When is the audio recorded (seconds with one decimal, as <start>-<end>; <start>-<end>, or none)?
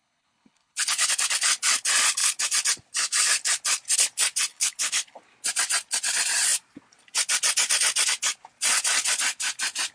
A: 1.1-4.5; 5.2-9.9